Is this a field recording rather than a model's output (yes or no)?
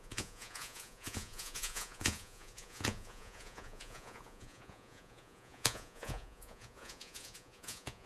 no